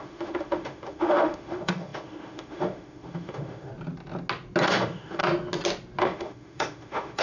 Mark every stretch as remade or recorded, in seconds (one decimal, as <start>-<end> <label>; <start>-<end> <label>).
0.0-3.7 remade; 3.7-4.7 recorded; 4.7-5.2 remade; 5.2-6.0 recorded; 6.0-7.2 remade